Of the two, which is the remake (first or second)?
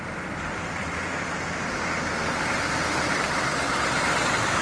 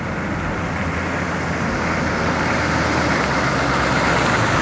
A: first